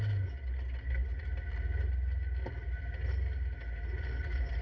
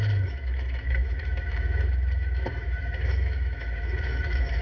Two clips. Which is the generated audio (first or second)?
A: second